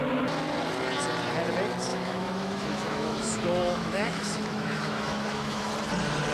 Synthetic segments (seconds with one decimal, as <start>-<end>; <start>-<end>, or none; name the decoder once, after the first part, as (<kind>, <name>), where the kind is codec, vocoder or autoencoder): 1.9-5.7 (autoencoder, DAC-VAE)